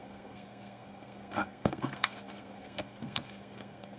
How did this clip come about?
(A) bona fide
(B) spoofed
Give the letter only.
B